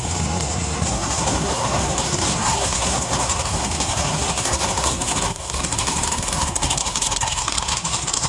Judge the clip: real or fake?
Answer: fake